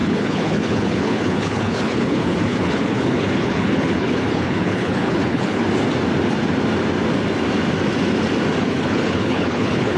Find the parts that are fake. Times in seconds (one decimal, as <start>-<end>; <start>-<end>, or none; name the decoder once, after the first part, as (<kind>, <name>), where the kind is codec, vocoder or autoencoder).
0.0-5.6 (codec, HILCodec); 8.6-10.0